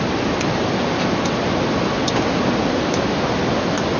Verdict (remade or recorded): recorded